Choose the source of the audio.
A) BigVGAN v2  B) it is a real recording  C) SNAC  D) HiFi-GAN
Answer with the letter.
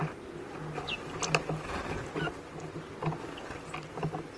B